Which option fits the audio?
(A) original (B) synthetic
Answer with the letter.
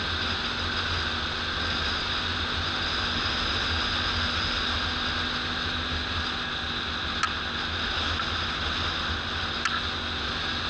A